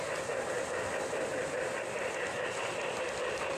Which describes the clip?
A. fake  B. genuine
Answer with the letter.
B